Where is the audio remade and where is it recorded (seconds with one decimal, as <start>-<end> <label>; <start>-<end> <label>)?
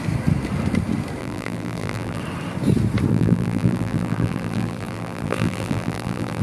0.0-1.2 recorded; 1.2-2.2 remade; 2.2-3.1 recorded; 3.1-6.4 remade